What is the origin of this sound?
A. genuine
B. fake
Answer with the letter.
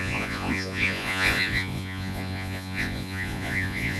B